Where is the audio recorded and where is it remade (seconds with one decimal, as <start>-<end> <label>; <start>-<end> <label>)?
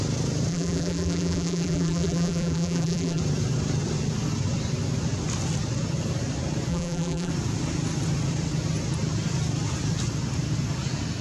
0.0-0.5 recorded; 0.5-3.2 remade; 3.2-6.7 recorded; 6.7-7.3 remade; 7.3-11.2 recorded